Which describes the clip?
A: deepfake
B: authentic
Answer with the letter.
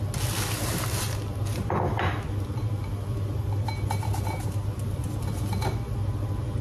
B